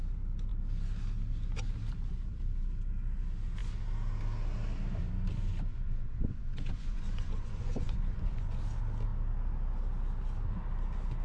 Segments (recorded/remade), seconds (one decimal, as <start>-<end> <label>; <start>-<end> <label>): 0.0-5.7 recorded; 5.7-8.6 remade; 8.6-11.2 recorded